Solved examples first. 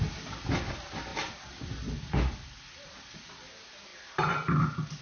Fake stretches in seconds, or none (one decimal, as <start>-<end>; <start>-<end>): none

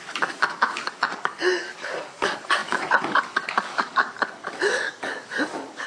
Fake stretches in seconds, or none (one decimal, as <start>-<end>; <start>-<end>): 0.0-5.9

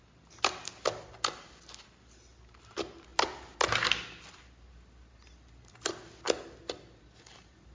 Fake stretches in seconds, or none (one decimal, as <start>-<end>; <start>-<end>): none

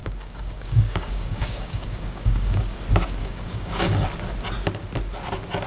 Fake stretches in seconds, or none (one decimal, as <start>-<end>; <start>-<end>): 0.0-2.8; 3.2-4.1

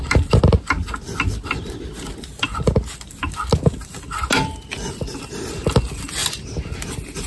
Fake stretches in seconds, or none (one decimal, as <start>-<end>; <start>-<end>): none

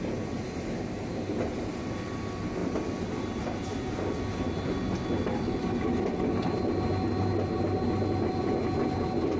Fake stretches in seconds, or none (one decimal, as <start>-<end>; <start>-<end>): none